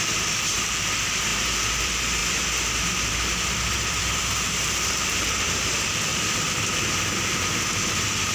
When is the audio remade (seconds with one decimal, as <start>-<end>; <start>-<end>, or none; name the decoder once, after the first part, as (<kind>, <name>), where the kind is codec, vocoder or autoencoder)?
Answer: 0.0-2.2 (vocoder, BigVGAN v2); 2.9-6.1; 7.8-8.3